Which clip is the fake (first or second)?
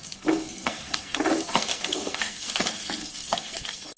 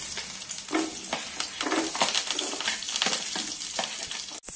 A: first